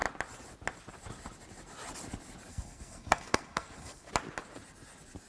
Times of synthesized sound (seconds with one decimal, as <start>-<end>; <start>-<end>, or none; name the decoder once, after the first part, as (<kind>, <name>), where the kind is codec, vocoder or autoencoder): 2.5-4.1 (codec, SNAC)

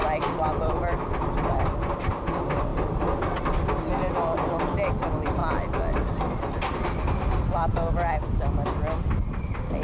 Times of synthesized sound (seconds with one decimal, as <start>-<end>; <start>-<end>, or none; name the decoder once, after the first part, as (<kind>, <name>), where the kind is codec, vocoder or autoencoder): none

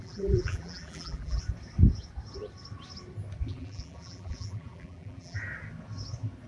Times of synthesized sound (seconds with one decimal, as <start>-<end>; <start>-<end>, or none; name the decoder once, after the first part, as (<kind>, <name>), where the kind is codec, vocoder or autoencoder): 0.0-1.4 (vocoder, BigVGAN v2); 3.5-5.4